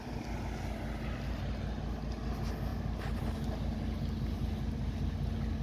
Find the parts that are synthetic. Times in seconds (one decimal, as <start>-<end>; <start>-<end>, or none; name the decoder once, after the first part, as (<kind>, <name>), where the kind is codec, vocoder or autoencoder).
2.7-3.2 (vocoder, BigVGAN v2)